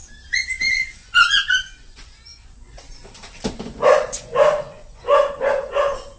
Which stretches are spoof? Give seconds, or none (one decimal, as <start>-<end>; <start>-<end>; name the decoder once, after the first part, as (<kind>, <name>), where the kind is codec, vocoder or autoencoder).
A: 0.7-3.0 (vocoder, Vocos); 3.6-6.2